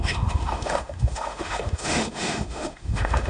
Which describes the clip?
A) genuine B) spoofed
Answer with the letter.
B